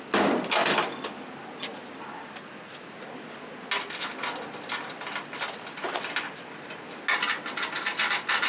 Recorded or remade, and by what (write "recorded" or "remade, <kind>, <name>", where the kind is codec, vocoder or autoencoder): recorded